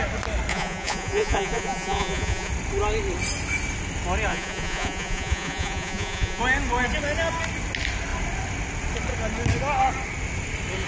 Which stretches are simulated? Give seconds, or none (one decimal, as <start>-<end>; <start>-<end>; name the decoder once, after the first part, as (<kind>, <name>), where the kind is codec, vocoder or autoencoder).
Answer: 0.5-2.5 (vocoder, Vocos); 4.3-6.4